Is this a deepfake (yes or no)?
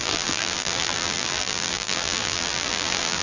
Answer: yes